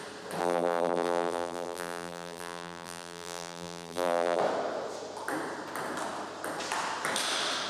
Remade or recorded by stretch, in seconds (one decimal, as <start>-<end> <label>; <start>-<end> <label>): 0.0-0.4 recorded; 0.4-4.4 remade; 4.4-7.7 recorded